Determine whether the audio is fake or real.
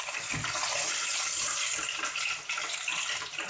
real